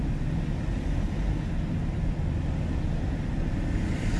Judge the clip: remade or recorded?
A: recorded